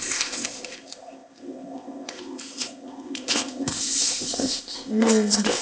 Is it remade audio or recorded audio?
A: remade